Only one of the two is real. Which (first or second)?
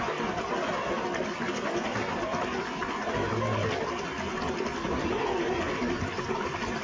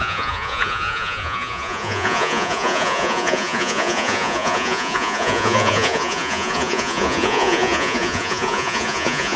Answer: first